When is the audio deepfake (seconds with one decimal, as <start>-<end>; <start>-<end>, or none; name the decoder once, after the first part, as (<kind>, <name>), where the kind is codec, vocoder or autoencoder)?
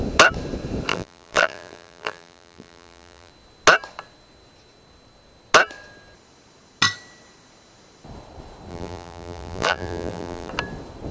0.9-3.3 (vocoder, BigVGAN v2); 8.7-10.5